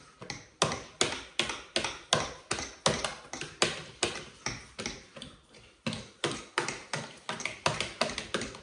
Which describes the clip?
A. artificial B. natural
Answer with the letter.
B